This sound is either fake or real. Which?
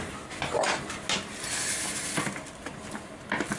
real